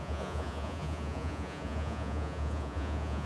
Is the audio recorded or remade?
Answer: remade